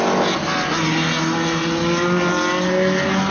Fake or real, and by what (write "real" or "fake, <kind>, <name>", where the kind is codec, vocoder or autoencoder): real